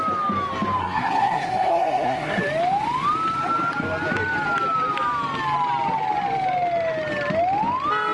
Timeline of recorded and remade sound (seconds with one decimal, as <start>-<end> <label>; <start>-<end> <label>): 0.0-0.8 recorded; 0.8-2.4 remade; 2.4-8.1 recorded